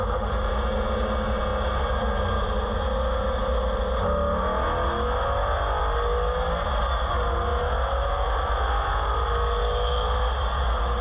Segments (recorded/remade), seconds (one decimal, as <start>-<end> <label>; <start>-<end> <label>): 0.0-11.0 recorded